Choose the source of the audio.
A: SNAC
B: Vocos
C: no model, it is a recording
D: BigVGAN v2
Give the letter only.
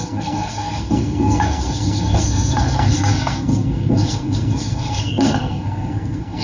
A